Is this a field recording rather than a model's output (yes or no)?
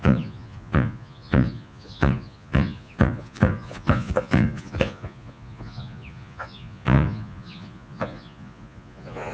no